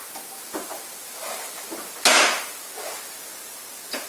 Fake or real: real